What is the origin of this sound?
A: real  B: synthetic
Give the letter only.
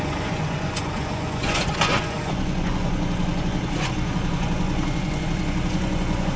B